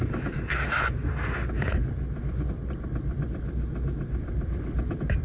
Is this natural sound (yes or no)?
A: yes